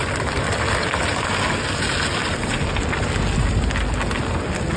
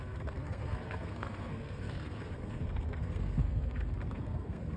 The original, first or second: first